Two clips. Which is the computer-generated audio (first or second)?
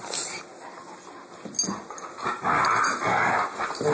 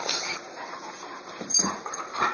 second